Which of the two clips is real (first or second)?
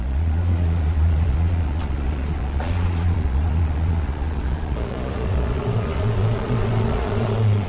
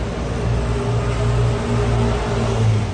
second